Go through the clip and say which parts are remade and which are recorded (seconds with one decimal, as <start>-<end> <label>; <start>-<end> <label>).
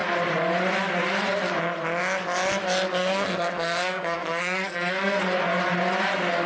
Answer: 0.0-3.0 recorded; 3.0-5.2 remade; 5.2-6.5 recorded